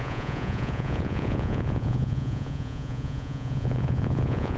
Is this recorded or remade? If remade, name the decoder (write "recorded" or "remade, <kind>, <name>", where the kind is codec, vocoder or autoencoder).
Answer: remade, vocoder, Vocos